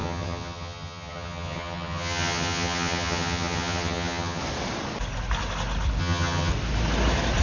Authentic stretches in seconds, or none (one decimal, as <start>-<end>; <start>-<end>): 4.4-6.0; 6.5-7.4